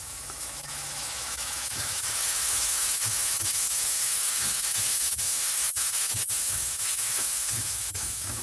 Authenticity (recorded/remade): remade